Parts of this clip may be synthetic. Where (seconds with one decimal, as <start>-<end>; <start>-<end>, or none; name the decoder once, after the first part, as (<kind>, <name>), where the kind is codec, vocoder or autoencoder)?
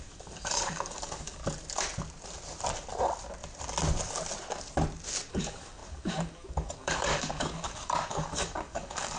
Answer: 0.0-1.4 (codec, DAC); 5.3-9.2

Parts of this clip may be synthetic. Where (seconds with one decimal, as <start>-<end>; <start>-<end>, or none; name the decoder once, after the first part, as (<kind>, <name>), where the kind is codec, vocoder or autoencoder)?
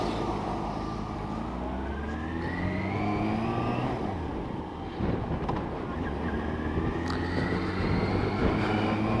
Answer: 8.4-9.2 (vocoder, BigVGAN v2)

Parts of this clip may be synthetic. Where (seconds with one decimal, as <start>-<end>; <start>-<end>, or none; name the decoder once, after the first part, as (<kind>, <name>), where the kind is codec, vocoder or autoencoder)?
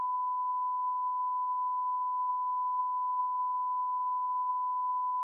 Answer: none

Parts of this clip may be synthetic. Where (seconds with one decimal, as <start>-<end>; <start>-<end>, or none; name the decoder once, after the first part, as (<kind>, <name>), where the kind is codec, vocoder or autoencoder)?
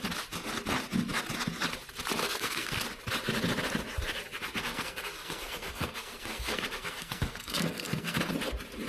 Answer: 2.2-2.8 (codec, SNAC); 4.6-8.2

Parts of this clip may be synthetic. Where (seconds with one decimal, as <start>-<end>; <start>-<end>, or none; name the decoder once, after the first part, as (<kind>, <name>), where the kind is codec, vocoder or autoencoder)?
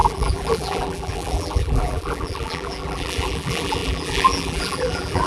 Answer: 0.0-5.3 (vocoder, BigVGAN v2)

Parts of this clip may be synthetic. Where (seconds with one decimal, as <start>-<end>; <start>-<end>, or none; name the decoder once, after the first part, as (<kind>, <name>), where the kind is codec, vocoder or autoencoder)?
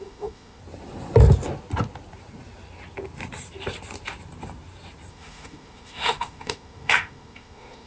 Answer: 0.0-0.6 (autoencoder, DAC-VAE); 5.1-7.9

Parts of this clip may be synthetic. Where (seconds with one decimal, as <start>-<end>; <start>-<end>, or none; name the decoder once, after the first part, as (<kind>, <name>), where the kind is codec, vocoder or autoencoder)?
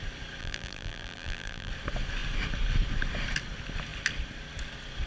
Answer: 0.4-1.7 (vocoder, BigVGAN v2)